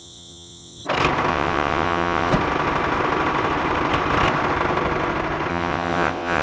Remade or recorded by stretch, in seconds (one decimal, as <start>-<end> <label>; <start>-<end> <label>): 0.0-0.8 remade; 0.8-1.3 recorded; 1.3-2.3 remade; 2.3-5.5 recorded; 5.5-6.4 remade